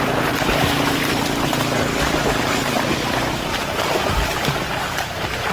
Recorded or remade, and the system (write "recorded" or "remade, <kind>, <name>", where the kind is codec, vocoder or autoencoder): remade, vocoder, BigVGAN v2